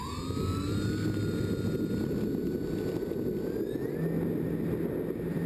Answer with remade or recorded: recorded